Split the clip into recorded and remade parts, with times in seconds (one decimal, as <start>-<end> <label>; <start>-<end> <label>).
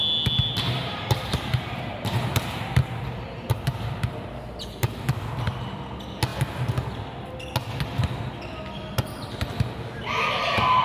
0.0-0.8 recorded; 0.8-4.8 remade; 4.8-10.8 recorded